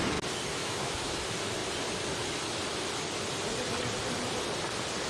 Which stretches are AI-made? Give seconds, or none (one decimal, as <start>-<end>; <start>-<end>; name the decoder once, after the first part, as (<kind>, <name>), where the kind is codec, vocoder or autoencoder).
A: 0.6-1.2 (autoencoder, DAC-VAE)